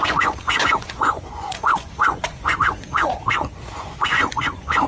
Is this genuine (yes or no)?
no